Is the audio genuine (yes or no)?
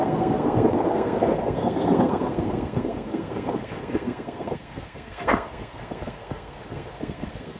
no